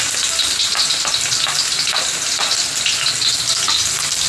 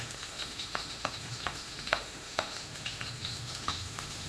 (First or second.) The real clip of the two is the first